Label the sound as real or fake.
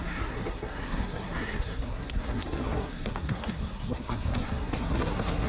fake